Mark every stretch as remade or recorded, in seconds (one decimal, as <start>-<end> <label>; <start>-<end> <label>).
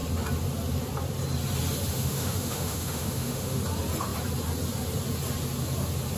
0.0-1.9 recorded; 1.9-3.6 remade; 3.6-6.2 recorded